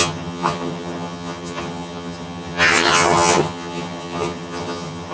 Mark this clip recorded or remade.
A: remade